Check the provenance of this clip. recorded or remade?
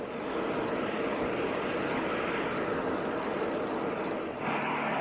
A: recorded